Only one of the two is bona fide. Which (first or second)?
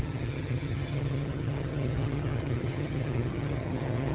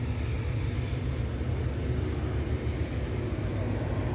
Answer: second